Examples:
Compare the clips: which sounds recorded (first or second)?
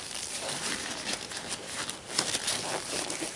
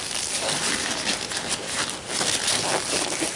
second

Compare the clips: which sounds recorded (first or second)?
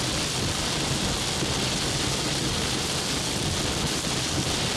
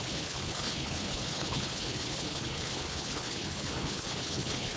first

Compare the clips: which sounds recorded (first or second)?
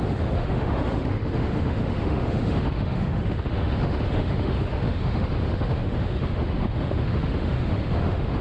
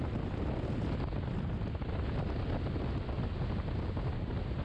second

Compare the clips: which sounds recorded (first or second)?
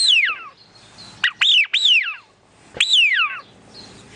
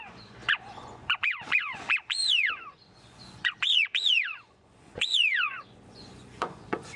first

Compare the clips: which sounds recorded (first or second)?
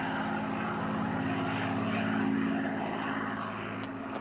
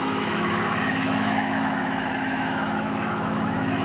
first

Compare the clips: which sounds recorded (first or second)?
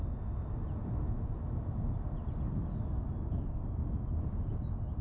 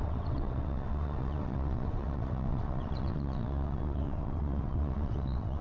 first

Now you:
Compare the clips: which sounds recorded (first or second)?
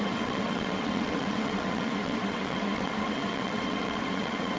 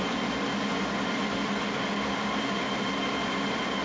second